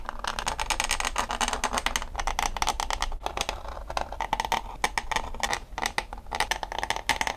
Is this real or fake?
real